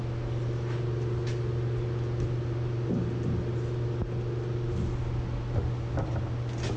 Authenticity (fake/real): real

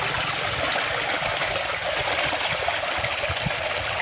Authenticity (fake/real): real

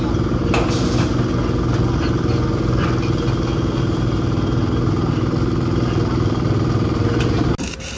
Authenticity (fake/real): real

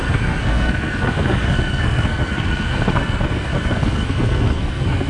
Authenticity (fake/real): fake